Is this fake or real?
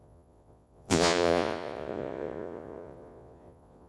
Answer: fake